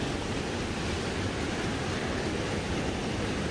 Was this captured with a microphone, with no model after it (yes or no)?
yes